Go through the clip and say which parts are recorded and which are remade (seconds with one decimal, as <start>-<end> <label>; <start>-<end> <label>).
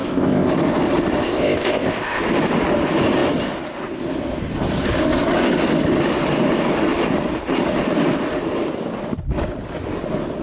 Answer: 0.0-0.5 remade; 0.5-1.2 recorded; 1.2-2.2 remade; 2.2-10.4 recorded